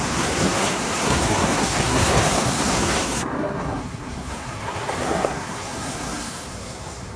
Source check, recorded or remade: remade